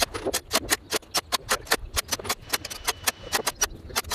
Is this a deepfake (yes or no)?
no